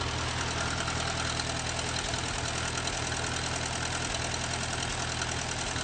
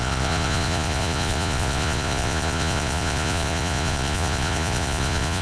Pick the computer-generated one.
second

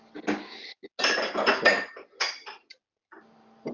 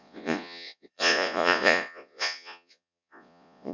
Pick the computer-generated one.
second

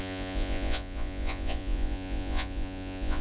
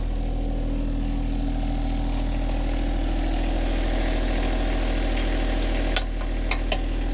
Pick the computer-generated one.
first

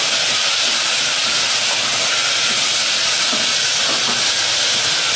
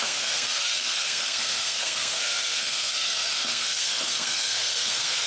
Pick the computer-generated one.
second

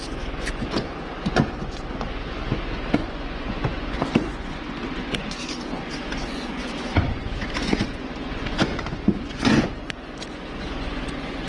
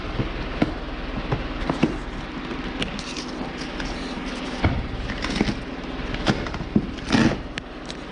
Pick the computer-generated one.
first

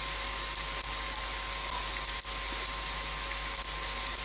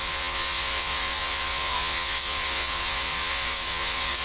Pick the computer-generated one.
second